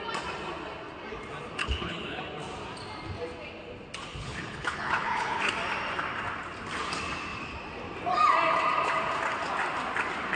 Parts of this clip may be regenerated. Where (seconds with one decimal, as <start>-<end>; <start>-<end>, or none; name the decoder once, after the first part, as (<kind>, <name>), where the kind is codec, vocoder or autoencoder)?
1.6-2.2 (codec, HILCodec); 4.1-5.4

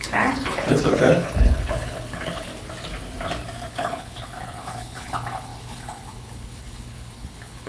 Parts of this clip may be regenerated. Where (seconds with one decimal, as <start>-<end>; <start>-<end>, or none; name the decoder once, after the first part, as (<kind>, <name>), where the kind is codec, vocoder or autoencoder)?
0.0-2.5 (codec, HILCodec); 3.7-7.7

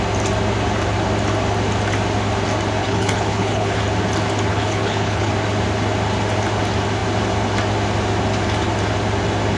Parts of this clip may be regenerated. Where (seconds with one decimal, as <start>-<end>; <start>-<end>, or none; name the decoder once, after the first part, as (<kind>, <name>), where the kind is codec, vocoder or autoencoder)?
2.8-3.8 (codec, HILCodec); 4.5-5.3

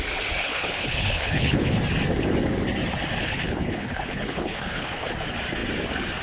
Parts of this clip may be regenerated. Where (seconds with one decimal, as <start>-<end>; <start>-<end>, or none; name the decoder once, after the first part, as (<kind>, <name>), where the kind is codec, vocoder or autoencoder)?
0.5-1.8 (codec, HILCodec); 3.2-5.1

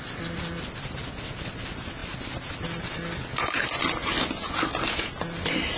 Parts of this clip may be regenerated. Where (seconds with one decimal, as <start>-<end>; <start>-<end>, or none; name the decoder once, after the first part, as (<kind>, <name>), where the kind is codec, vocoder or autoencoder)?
none

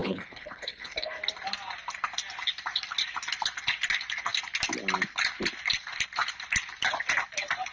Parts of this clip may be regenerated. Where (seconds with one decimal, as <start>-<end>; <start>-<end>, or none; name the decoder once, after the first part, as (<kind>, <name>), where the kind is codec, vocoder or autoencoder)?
0.0-1.2 (codec, HILCodec)